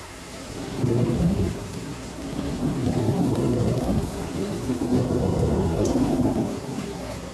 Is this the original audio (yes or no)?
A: no